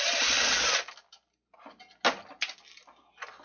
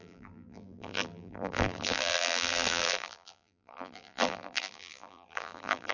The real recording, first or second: first